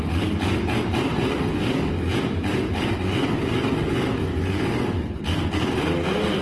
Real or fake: real